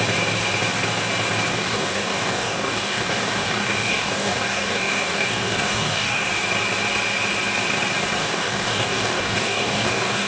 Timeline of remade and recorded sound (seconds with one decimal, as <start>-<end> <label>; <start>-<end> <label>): 0.0-1.5 recorded; 1.5-6.3 remade; 6.3-8.2 recorded; 8.2-10.3 remade